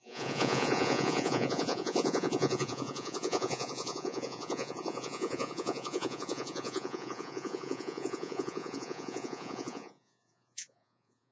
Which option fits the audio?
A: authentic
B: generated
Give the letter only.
B